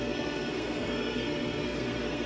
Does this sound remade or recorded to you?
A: remade